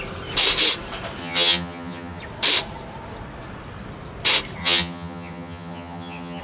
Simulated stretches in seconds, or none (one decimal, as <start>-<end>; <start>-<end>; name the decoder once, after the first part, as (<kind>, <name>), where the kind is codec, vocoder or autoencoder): 1.2-2.2 (vocoder, HiFi-GAN); 4.6-6.4